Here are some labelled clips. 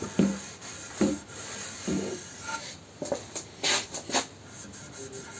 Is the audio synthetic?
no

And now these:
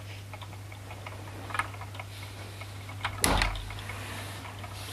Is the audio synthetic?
no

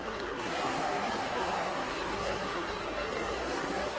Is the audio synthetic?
yes